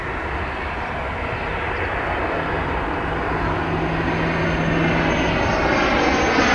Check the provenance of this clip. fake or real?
real